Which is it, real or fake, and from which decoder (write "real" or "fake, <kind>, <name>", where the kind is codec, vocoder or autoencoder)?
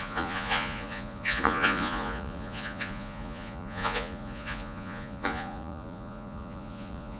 fake, vocoder, Vocos